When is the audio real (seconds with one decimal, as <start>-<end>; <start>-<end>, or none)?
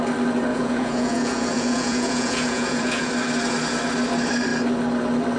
0.0-0.5; 3.1-5.4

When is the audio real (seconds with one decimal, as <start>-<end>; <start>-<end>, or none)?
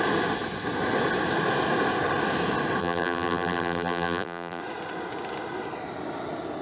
0.0-2.8; 4.6-6.6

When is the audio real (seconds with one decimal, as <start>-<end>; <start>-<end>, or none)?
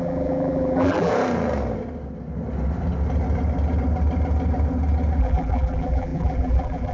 1.1-5.2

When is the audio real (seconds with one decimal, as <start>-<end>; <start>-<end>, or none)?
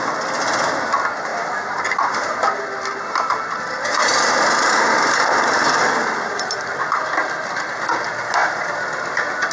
0.0-1.3; 6.3-8.4